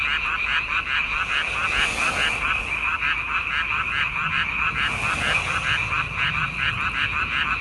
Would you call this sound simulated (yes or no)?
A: no